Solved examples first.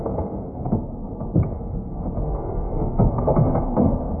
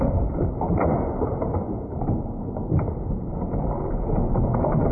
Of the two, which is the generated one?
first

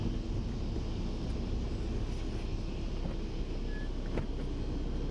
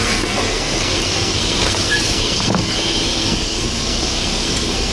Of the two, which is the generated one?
second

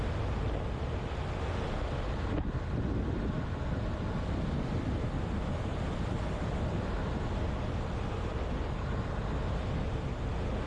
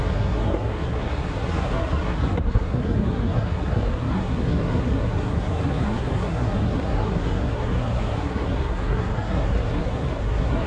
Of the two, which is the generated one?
second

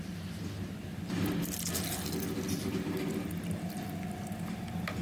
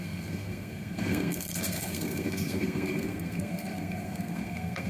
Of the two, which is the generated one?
second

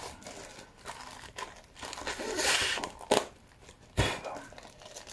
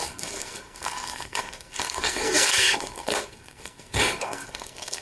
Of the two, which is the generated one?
second